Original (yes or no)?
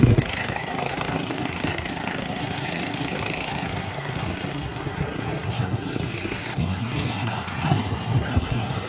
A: no